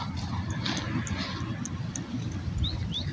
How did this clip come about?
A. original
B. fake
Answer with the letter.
A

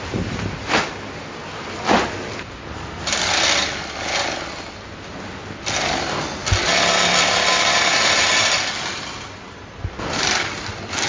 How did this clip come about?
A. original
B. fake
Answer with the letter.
A